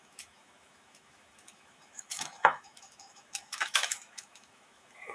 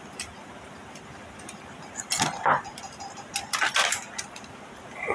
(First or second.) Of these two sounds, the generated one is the first